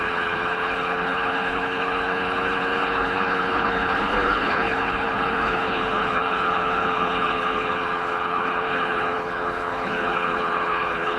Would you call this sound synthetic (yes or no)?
yes